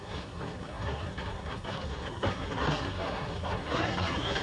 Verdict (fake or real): fake